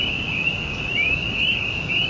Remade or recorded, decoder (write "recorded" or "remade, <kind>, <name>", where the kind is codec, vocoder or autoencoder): remade, codec, DAC